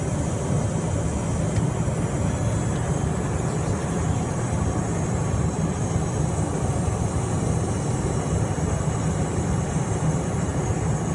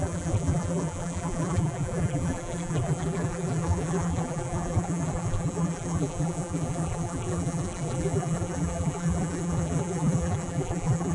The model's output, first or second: second